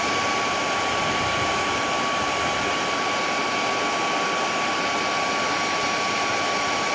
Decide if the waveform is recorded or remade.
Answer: recorded